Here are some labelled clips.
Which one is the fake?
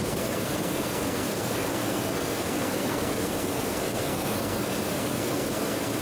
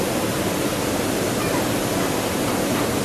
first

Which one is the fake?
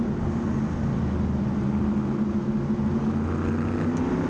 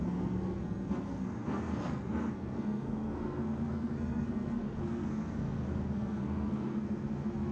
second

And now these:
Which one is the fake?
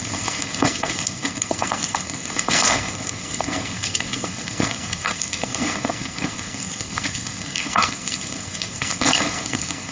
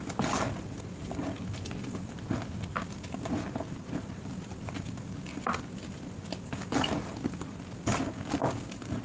first